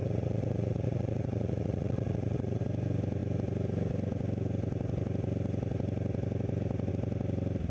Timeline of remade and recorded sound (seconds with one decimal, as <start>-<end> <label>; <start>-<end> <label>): 0.0-2.6 remade; 2.6-7.7 recorded